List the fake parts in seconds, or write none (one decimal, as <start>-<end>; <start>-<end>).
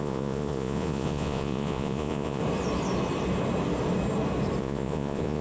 0.0-2.4; 4.6-5.4